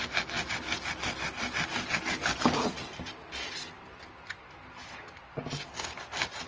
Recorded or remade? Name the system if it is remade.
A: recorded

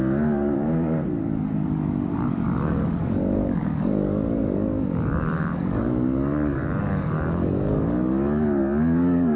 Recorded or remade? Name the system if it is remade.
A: remade, codec, DAC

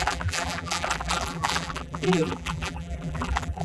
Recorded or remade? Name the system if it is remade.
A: remade, vocoder, BigVGAN v2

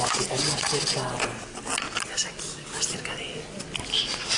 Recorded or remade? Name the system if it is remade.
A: recorded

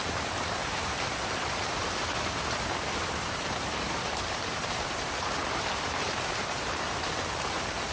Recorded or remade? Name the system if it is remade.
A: remade, vocoder, BigVGAN v2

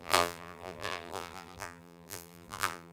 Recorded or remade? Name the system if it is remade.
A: remade, vocoder, BigVGAN v2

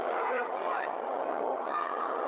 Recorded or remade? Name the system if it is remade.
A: remade, vocoder, HiFi-GAN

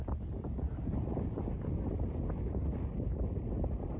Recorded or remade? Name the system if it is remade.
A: recorded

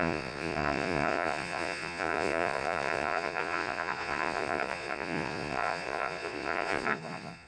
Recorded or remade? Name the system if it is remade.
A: remade, vocoder, Vocos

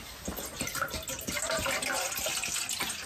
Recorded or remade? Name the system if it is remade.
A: recorded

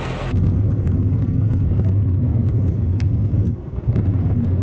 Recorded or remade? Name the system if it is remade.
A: remade, codec, SNAC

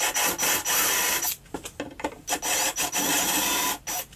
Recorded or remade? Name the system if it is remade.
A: recorded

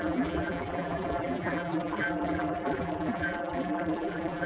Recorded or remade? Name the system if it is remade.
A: remade, vocoder, BigVGAN v2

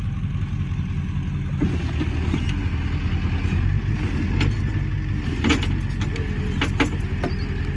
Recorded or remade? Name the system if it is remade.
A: recorded